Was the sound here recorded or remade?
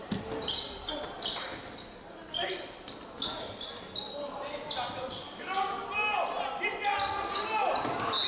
recorded